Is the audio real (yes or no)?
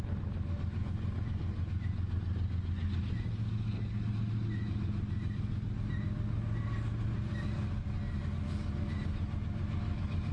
yes